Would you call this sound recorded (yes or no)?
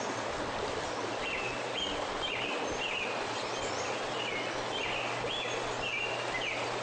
yes